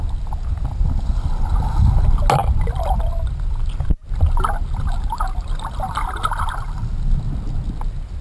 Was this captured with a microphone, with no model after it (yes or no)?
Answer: yes